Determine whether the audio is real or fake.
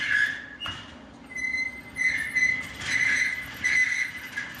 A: real